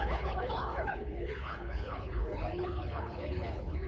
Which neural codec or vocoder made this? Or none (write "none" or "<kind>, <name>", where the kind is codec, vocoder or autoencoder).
codec, HILCodec